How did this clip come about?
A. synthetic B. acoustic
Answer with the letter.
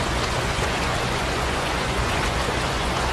A